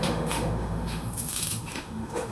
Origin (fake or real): fake